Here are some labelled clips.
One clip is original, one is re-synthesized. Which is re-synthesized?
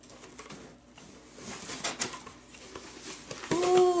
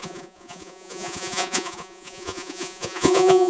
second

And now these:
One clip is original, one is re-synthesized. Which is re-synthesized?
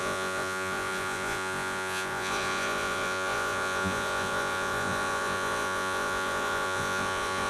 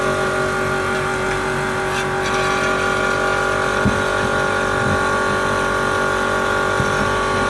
first